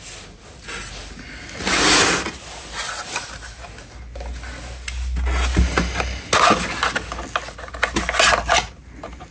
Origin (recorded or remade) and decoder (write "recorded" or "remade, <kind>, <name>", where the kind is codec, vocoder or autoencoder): recorded